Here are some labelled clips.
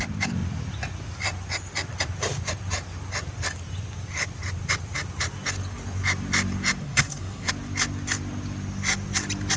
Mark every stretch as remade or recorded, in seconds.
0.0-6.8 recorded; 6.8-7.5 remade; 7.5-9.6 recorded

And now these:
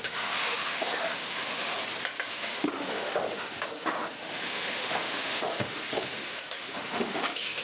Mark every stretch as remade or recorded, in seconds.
0.0-1.7 remade; 1.7-2.3 recorded; 2.3-7.6 remade